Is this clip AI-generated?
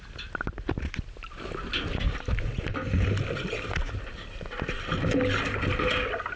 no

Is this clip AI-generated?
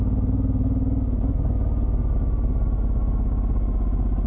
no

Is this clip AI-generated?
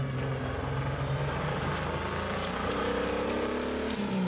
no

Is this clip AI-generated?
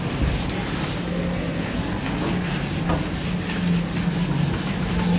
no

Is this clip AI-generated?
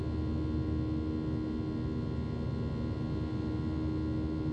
no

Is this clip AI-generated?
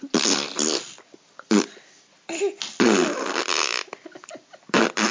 no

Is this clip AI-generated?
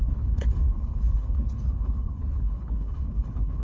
yes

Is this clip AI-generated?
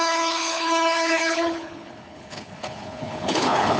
yes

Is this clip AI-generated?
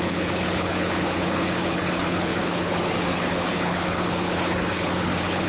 yes